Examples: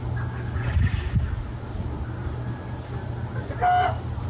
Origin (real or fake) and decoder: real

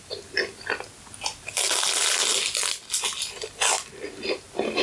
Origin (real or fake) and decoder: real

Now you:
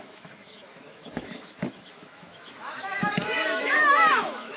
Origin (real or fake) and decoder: fake, autoencoder, DAC-VAE